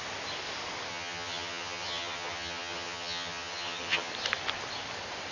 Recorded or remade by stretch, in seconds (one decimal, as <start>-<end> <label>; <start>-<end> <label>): 0.0-0.9 recorded; 0.9-4.1 remade; 4.1-5.3 recorded